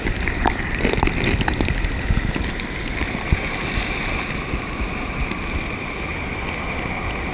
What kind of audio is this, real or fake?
real